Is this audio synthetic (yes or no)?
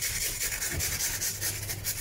no